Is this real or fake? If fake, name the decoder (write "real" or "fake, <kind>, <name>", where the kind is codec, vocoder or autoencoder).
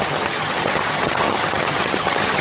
fake, vocoder, HiFi-GAN